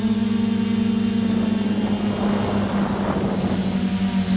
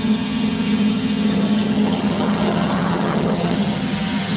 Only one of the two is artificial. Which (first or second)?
second